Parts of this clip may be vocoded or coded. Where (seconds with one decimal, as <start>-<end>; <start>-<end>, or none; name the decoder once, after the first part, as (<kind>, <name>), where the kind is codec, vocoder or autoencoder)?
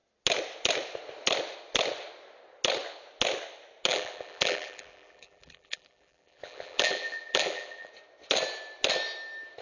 3.9-7.9 (vocoder, BigVGAN v2)